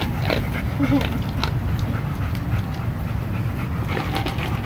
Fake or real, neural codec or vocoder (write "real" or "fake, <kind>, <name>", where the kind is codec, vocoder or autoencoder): real